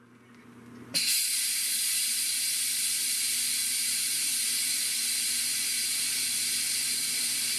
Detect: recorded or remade recorded